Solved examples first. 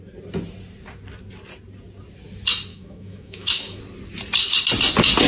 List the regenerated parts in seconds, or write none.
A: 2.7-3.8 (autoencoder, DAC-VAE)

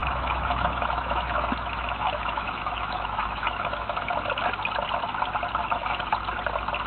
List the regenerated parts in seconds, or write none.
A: 0.0-4.1 (autoencoder, DAC-VAE); 5.6-6.1

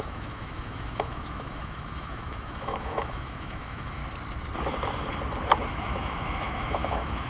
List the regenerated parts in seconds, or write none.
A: 0.0-4.0 (autoencoder, DAC-VAE); 5.7-7.3

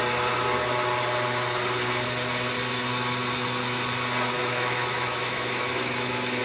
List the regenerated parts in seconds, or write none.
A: 4.4-6.4 (autoencoder, DAC-VAE)

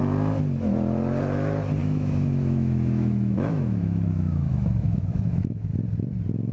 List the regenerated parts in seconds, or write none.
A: 1.8-5.7 (autoencoder, DAC-VAE)

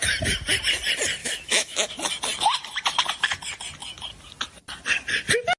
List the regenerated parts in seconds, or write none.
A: 1.2-1.9 (autoencoder, DAC-VAE)

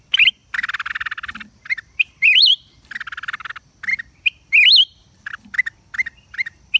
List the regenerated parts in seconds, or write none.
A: none